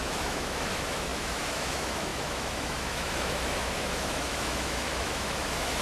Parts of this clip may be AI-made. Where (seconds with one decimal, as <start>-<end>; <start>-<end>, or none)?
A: 0.0-5.8